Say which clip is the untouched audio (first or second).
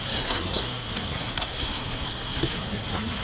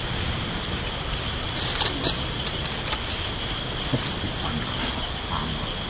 second